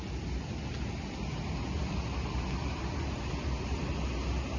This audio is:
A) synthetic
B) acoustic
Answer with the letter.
B